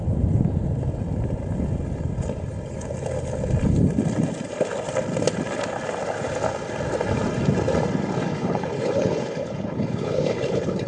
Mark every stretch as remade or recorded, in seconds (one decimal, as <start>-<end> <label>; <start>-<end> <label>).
0.0-8.3 recorded; 8.3-10.9 remade